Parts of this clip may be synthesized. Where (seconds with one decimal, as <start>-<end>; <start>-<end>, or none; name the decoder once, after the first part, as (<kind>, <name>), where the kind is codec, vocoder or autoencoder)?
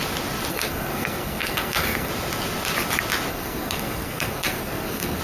0.5-2.1 (codec, SNAC); 3.3-5.2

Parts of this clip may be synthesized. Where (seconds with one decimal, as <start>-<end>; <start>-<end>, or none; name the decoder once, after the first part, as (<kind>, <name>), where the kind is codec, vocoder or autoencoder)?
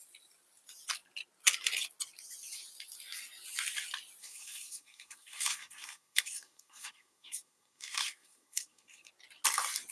4.2-9.1 (codec, SNAC)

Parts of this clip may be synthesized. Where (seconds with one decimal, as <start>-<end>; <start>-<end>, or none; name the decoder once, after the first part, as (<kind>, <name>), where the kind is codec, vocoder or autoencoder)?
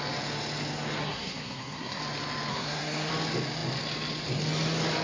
1.0-2.0 (codec, SNAC); 2.5-3.1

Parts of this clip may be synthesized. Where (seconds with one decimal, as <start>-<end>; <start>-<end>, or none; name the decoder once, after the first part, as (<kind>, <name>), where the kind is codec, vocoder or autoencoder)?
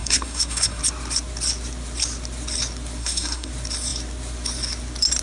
0.0-0.8 (codec, SNAC); 3.0-3.5